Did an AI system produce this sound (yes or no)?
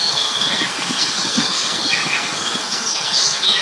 yes